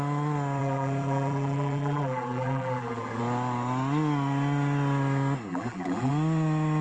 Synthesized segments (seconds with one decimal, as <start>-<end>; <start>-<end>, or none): 0.6-3.2; 5.5-6.1